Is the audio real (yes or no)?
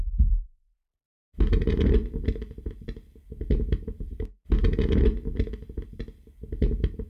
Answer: yes